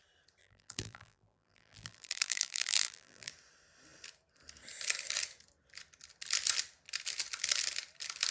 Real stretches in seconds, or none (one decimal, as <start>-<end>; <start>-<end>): 0.0-0.4; 3.3-8.3